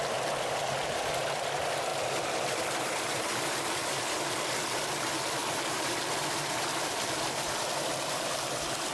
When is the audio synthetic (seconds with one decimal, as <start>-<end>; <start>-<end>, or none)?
1.9-4.0; 5.4-5.9; 6.7-8.9